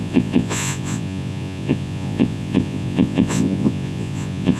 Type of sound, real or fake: fake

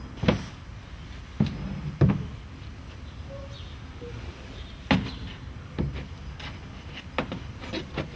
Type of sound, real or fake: real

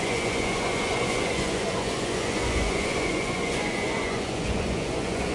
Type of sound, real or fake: fake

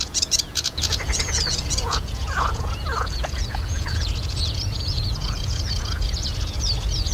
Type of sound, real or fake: fake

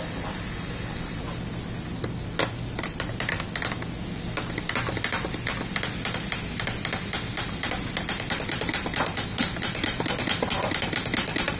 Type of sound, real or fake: real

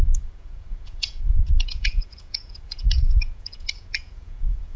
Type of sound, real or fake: fake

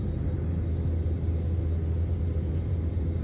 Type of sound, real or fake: real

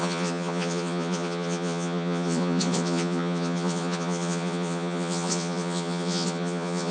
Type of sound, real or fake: fake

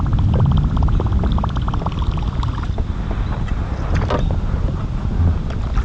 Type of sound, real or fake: real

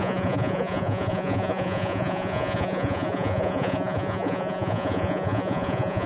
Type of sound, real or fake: fake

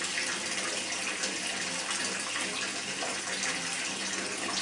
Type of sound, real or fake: real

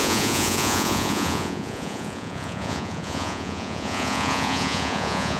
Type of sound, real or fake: fake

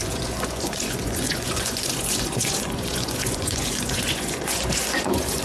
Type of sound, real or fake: fake